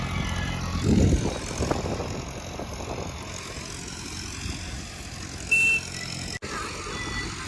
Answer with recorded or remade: recorded